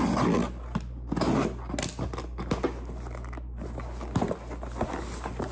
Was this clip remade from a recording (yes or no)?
no